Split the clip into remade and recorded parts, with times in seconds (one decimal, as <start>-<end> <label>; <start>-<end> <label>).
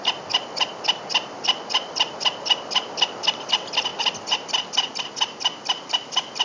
0.0-6.4 recorded